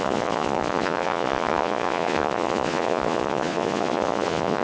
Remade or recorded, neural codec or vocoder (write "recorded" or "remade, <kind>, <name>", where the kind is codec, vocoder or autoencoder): remade, vocoder, Vocos